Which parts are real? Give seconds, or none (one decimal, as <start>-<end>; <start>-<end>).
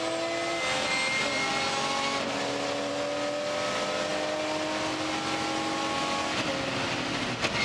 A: 0.0-7.6